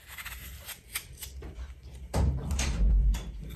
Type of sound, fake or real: real